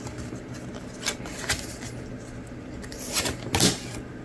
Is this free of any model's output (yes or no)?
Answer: yes